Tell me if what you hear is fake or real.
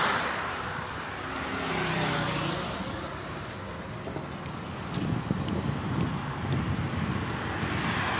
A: real